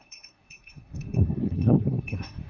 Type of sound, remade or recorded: remade